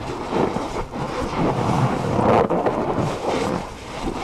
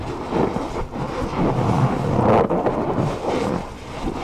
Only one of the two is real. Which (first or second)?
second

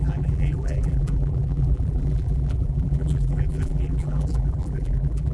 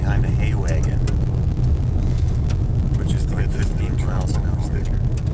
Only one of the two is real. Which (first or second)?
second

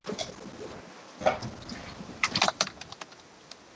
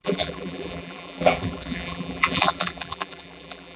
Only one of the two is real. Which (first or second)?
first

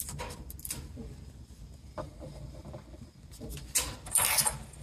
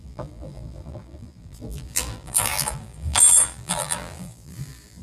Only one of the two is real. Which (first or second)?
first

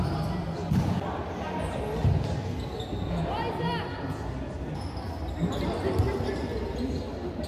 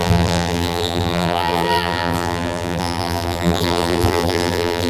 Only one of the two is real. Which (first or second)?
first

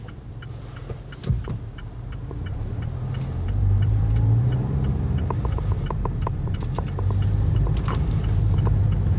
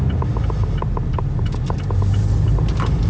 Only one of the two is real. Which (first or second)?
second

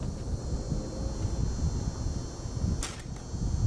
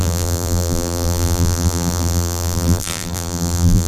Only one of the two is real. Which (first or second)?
first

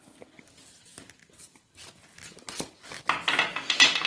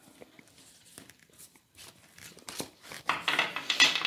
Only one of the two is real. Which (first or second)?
first